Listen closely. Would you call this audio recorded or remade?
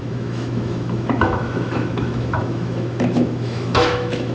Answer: remade